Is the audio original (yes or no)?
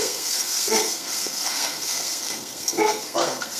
no